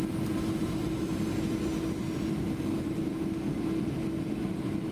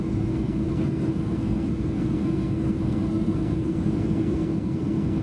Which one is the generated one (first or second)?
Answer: second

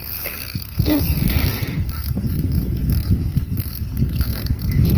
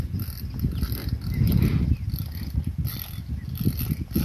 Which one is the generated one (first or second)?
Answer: first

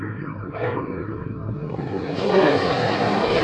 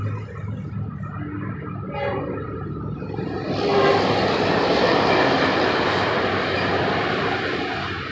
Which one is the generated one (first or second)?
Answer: first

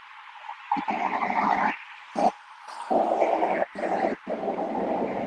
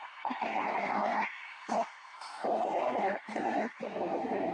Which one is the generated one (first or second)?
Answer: second